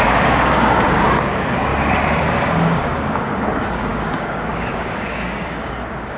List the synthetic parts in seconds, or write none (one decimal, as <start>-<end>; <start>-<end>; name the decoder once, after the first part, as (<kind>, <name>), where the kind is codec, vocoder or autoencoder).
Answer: 0.0-1.7 (codec, DAC); 2.2-6.2

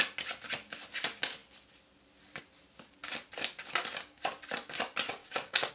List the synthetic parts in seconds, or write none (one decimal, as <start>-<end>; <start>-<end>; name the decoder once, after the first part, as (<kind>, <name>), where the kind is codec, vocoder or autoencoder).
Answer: 5.2-5.7 (codec, DAC)

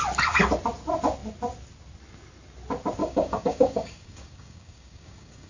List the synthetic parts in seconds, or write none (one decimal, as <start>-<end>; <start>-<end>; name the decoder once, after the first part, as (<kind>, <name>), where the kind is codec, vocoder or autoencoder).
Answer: 3.0-5.5 (codec, DAC)

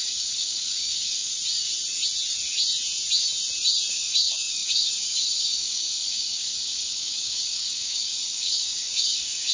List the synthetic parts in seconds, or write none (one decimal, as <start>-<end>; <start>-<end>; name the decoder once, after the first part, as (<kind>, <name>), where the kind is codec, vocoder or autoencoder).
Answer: 0.0-1.3 (codec, DAC); 3.9-9.5